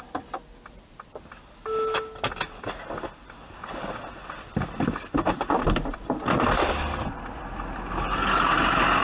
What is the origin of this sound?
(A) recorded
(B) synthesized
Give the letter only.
A